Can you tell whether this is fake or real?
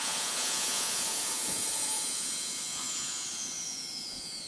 fake